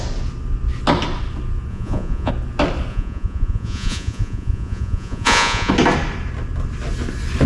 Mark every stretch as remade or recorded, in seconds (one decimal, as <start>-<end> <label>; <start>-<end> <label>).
0.0-1.7 recorded; 1.7-2.3 remade; 2.3-2.9 recorded; 2.9-5.7 remade; 5.7-7.5 recorded